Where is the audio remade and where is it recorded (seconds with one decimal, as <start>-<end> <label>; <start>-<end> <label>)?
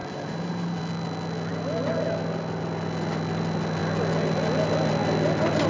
0.0-0.8 remade; 0.8-5.7 recorded